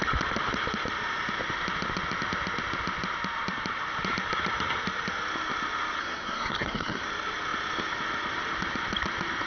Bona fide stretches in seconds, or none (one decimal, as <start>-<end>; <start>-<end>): 0.0-6.0; 7.0-9.5